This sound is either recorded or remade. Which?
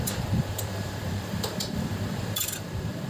remade